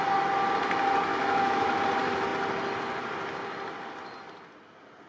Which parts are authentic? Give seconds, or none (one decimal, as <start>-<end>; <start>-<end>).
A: 0.0-1.1; 1.8-5.1